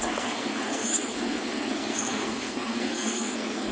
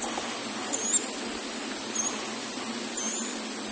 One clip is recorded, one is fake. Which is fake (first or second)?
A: first